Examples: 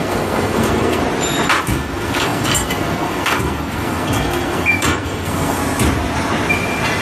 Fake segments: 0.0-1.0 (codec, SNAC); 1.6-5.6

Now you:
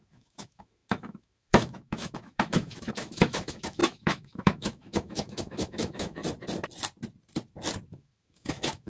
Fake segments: 0.0-6.2 (autoencoder, DAC-VAE); 7.9-8.9

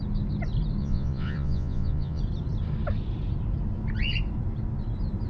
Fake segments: 0.8-2.2 (vocoder, Vocos)